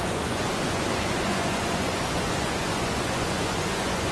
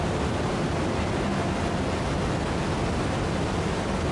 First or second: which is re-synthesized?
first